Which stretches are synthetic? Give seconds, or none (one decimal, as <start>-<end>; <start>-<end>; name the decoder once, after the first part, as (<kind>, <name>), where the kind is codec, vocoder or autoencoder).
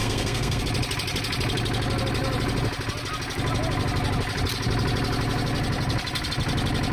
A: 0.0-0.6 (codec, SNAC)